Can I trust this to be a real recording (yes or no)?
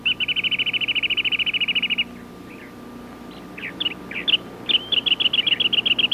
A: yes